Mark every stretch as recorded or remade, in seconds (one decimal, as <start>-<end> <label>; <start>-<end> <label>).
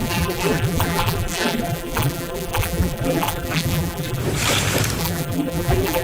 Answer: 0.0-4.2 remade; 4.2-5.0 recorded; 5.0-6.0 remade